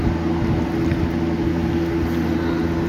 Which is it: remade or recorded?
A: recorded